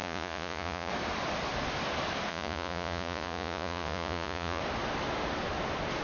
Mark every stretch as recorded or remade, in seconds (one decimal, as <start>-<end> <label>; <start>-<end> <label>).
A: 0.0-0.9 remade; 0.9-2.3 recorded; 2.3-4.6 remade; 4.6-6.0 recorded